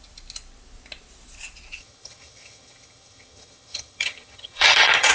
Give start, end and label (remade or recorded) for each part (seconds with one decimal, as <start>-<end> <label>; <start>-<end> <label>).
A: 0.0-1.8 recorded; 1.8-5.1 remade